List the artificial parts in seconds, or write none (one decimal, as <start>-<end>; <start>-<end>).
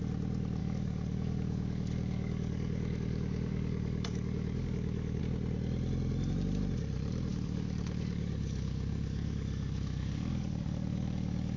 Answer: 0.6-5.2; 7.3-11.6